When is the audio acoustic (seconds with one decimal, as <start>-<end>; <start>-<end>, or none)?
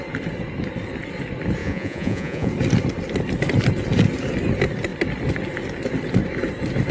0.0-1.6; 2.5-6.9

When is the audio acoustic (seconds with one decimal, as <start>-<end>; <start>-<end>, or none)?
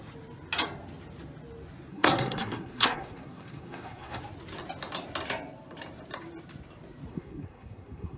0.0-1.9; 4.2-7.1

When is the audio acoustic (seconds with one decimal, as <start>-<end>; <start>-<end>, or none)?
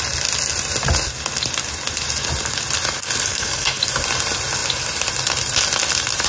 0.0-3.3; 3.8-6.3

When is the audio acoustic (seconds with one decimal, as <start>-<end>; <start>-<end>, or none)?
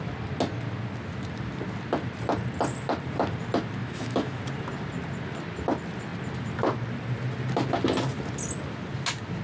0.0-3.8; 4.4-9.4